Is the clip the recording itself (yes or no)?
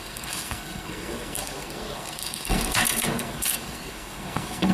no